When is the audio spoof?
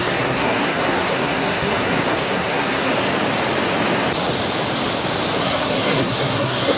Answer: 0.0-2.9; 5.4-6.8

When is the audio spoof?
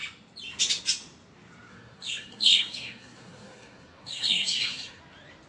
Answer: 1.7-5.0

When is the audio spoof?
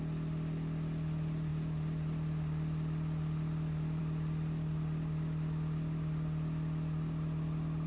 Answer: none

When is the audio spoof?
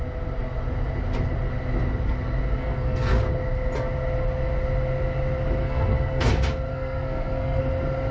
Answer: 2.6-3.2; 5.6-6.3; 6.7-7.6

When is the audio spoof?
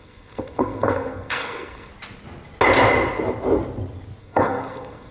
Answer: 0.0-1.9; 4.2-5.1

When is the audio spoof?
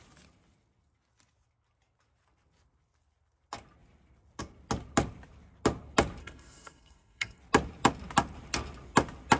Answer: 6.2-7.4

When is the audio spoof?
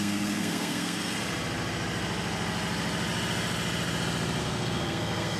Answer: 0.0-1.2; 4.4-5.4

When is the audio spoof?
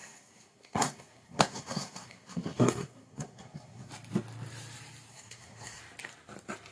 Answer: 0.0-3.9; 5.1-5.8